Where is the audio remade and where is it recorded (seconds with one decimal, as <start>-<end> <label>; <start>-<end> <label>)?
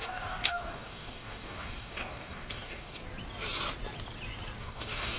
0.0-3.0 remade; 3.0-4.6 recorded; 4.6-5.2 remade